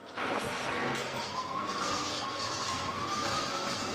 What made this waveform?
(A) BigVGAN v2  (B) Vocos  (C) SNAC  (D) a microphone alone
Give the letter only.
C